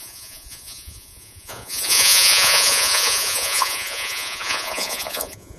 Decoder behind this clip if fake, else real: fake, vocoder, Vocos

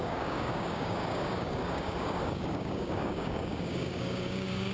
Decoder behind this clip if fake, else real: fake, codec, DAC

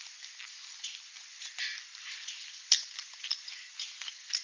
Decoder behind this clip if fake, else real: real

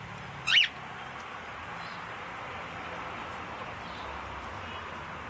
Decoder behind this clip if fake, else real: fake, vocoder, BigVGAN v2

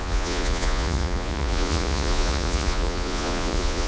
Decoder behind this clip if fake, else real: fake, vocoder, Vocos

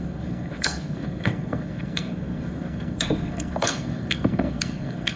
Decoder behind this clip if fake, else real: fake, codec, SNAC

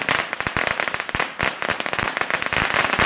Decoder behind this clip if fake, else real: real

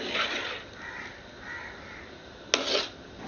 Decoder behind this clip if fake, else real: real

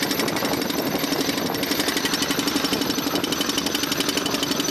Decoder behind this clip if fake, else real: real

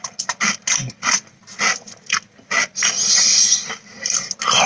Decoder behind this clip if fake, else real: real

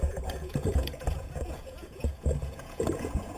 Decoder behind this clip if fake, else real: fake, vocoder, Vocos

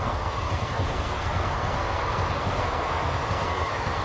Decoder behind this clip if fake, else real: fake, codec, SNAC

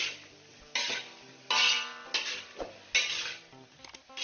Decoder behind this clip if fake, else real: real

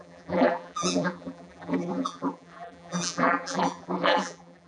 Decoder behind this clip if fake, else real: fake, vocoder, BigVGAN v2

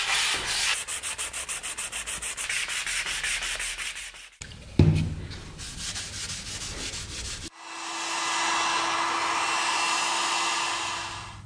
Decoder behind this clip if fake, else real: real